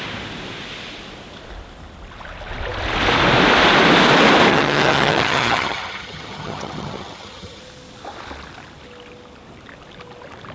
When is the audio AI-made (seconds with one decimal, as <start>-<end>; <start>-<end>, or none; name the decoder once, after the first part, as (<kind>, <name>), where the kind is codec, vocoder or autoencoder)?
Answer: 4.5-7.6 (vocoder, HiFi-GAN)